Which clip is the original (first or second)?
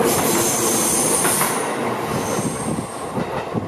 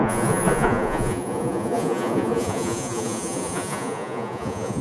first